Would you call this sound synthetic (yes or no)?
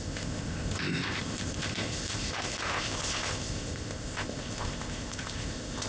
yes